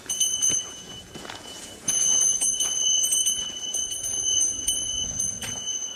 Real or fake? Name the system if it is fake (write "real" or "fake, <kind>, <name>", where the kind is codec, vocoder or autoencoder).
fake, vocoder, Vocos